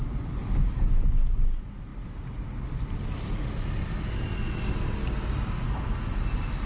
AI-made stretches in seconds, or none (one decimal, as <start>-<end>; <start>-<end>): none